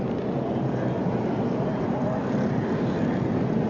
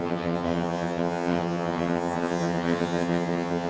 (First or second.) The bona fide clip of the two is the first